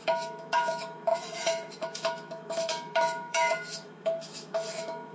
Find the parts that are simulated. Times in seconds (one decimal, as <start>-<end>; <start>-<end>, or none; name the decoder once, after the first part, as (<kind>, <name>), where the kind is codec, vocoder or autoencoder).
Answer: 0.0-5.1 (autoencoder, DAC-VAE)